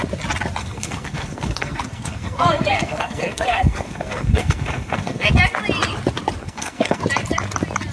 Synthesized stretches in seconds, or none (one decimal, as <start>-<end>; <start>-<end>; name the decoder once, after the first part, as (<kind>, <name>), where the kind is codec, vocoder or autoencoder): 0.6-5.3 (codec, SNAC); 6.4-7.0